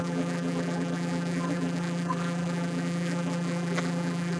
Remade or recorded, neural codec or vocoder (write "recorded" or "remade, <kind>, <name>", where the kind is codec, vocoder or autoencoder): remade, vocoder, BigVGAN v2